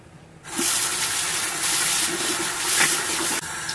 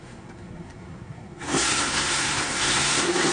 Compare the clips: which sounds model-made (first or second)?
second